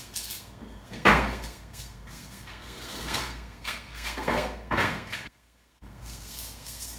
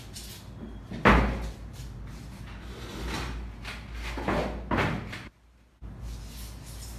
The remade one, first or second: first